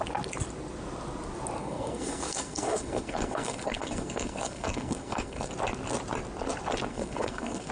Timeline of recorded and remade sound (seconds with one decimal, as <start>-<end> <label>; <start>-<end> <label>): 0.0-1.6 recorded; 1.6-5.5 remade; 5.5-6.9 recorded; 6.9-7.7 remade

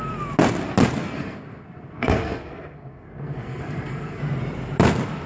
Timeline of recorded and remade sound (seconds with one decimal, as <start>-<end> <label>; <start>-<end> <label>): 0.0-1.0 recorded; 1.0-4.2 remade; 4.2-5.3 recorded

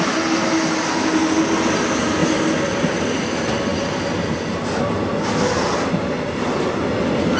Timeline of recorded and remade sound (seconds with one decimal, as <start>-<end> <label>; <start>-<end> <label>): 0.0-7.4 recorded

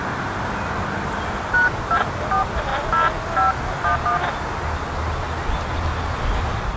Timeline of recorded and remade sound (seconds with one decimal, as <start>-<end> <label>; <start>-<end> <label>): 0.0-6.8 recorded

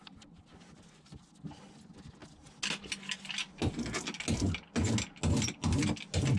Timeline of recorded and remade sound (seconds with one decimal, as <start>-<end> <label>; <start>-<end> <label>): 0.0-6.4 recorded